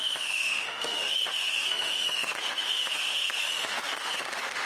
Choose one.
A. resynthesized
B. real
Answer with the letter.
A